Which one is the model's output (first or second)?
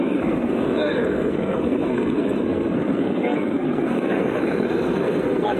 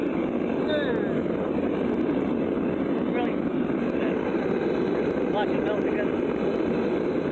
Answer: first